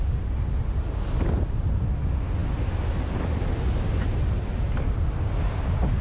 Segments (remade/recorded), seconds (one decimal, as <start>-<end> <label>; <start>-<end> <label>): 0.0-6.0 recorded